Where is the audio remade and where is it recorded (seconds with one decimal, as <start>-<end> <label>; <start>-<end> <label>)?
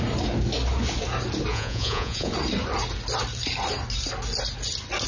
0.0-1.5 recorded; 1.5-2.3 remade; 2.3-5.1 recorded